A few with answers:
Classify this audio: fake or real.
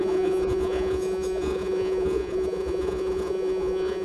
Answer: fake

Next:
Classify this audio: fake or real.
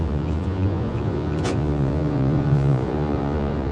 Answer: fake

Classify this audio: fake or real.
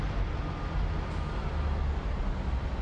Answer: real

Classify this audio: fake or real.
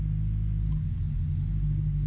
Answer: real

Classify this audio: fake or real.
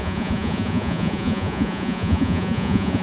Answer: fake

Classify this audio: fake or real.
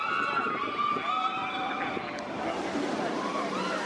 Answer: real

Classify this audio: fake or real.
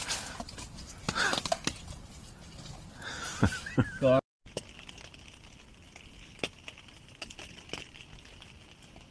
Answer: real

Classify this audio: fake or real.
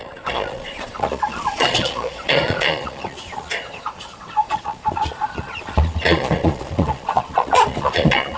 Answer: fake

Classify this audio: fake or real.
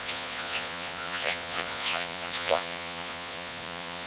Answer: fake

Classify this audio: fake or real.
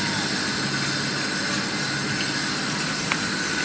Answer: real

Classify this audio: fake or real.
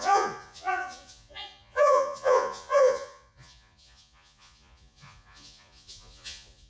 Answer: fake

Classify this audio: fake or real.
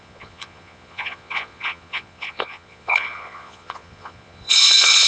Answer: fake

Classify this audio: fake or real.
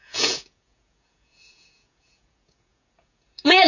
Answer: fake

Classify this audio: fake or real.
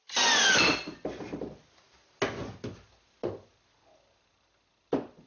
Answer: real